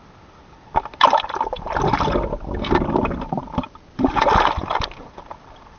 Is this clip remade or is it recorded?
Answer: recorded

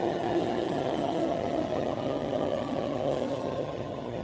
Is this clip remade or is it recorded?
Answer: remade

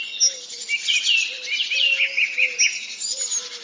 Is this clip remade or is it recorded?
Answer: recorded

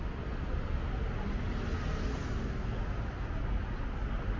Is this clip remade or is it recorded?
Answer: recorded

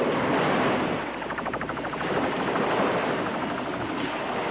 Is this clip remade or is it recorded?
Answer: recorded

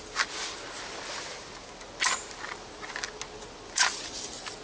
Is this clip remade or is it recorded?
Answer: recorded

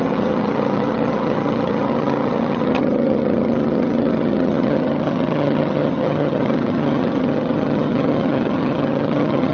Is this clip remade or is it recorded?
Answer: remade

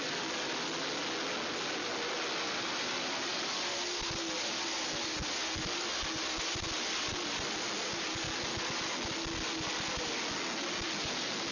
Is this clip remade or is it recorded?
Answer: recorded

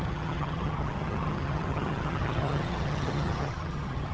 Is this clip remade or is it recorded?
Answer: remade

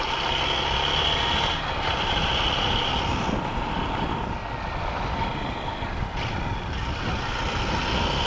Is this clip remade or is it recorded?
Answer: recorded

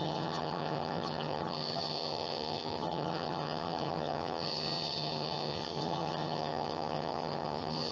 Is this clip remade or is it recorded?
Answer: remade